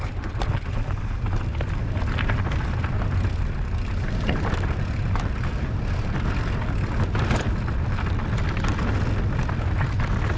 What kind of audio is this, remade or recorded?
remade